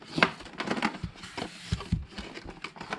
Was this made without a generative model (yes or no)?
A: yes